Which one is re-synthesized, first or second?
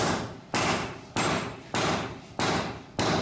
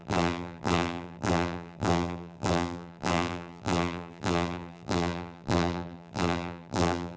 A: second